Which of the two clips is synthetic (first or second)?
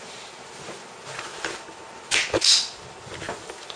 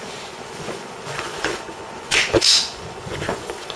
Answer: second